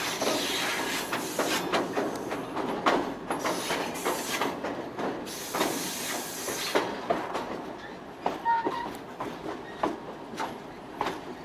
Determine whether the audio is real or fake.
real